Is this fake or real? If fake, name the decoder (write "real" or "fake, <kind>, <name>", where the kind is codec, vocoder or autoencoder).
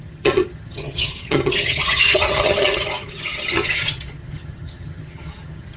fake, vocoder, HiFi-GAN